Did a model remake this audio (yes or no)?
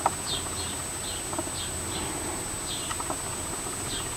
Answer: no